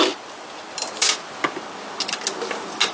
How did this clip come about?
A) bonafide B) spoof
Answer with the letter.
A